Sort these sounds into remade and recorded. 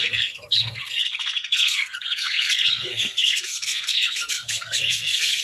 remade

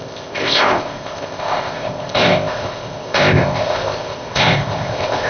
remade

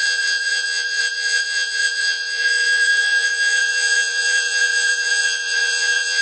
remade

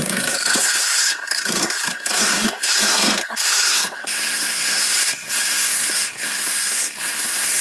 remade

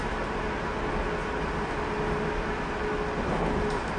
recorded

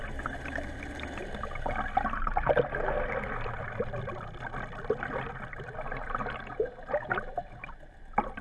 recorded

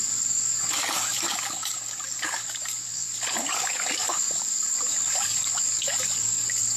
remade